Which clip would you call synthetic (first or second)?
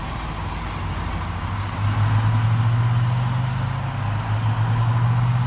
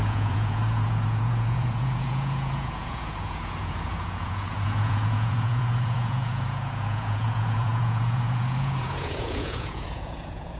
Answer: second